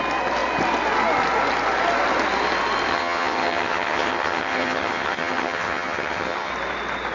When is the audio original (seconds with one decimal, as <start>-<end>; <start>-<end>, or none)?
0.0-2.9; 6.5-7.1